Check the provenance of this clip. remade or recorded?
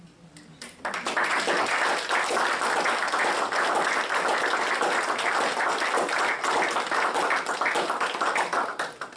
recorded